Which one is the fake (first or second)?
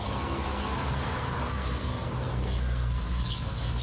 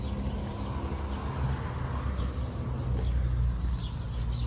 first